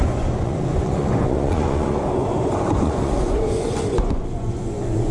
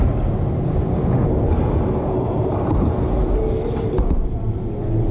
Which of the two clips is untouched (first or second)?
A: second